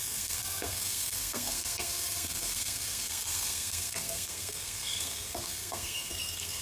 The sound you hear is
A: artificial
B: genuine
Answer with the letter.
A